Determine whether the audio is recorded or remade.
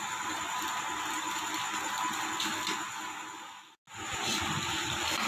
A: recorded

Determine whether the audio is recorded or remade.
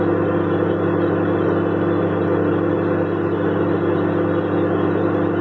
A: recorded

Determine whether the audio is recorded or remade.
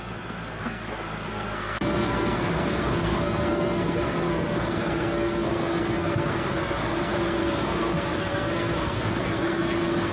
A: remade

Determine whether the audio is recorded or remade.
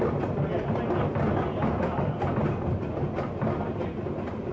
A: recorded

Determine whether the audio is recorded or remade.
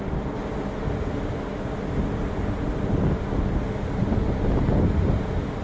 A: recorded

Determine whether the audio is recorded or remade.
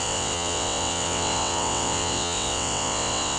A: remade